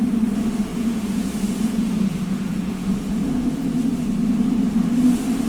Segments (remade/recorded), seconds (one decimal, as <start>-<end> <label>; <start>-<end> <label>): 0.0-0.7 recorded; 0.7-3.6 remade; 3.6-5.5 recorded